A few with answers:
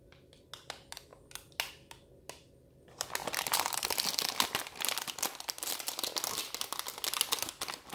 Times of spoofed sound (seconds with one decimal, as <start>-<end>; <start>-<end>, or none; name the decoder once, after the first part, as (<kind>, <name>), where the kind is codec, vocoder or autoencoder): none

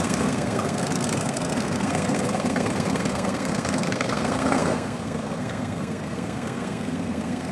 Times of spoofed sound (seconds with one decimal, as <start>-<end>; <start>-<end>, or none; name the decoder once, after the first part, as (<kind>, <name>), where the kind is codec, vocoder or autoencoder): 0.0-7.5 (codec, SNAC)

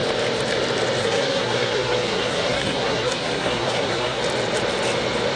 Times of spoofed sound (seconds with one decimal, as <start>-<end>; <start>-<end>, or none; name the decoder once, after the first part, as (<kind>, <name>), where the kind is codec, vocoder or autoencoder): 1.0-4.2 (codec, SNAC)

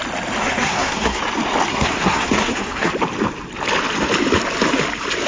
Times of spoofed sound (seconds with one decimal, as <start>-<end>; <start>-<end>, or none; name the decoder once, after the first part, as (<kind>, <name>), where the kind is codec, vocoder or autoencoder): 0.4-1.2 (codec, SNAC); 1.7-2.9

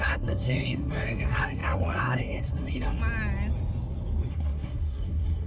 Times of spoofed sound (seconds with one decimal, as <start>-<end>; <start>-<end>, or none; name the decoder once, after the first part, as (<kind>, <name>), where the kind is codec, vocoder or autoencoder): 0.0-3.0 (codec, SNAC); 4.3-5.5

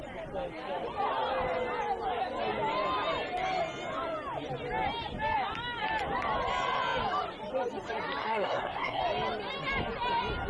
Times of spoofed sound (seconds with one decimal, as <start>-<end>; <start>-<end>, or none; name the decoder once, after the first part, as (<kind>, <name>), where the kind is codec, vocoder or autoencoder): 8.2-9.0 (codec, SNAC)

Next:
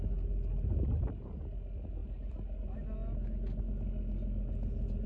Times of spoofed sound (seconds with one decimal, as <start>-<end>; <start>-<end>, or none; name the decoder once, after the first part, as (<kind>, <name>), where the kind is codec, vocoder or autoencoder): none

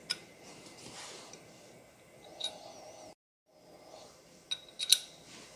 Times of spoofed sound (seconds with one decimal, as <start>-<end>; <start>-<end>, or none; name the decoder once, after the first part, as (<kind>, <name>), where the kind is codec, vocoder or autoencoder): none